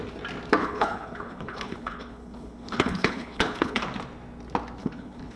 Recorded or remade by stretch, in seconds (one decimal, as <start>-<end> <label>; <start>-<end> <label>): 0.0-0.6 recorded; 0.6-3.8 remade; 3.8-4.8 recorded; 4.8-5.4 remade